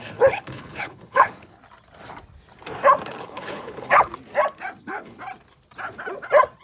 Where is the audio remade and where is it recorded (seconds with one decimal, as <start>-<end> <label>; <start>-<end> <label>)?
0.0-1.6 remade; 1.6-3.2 recorded; 3.2-4.1 remade; 4.1-4.8 recorded; 4.8-5.2 remade; 5.2-6.6 recorded